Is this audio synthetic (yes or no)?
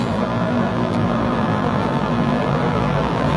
yes